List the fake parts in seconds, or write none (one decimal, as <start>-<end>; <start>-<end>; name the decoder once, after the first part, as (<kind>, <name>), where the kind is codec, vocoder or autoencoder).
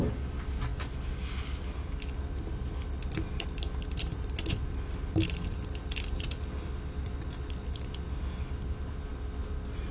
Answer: none